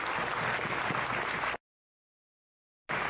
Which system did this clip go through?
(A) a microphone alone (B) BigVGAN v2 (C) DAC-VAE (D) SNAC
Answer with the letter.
A